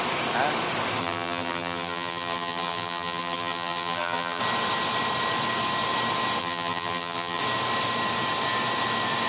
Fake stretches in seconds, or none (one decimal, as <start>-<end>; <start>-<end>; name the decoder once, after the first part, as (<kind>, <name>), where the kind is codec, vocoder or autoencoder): 1.0-4.4 (vocoder, BigVGAN v2); 6.4-7.4